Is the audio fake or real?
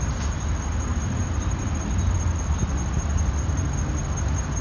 real